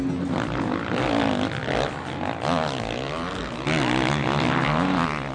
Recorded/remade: recorded